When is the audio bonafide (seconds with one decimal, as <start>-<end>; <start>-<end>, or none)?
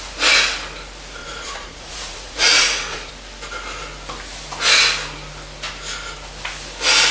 0.0-1.2; 3.1-7.1